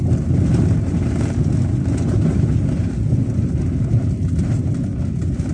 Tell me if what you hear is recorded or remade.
recorded